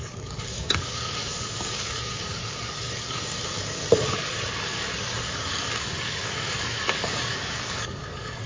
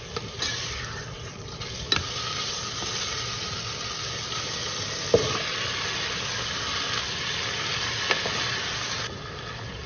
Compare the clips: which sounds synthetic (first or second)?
first